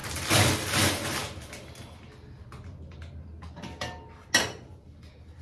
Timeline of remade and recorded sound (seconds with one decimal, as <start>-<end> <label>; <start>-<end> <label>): 0.0-5.4 recorded